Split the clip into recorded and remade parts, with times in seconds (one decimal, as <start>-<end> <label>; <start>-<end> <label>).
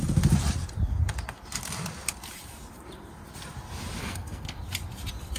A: 0.0-4.0 recorded; 4.0-4.6 remade; 4.6-5.4 recorded